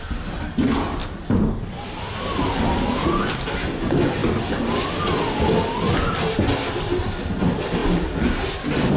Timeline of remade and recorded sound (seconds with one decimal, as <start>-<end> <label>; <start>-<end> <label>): 0.0-9.0 recorded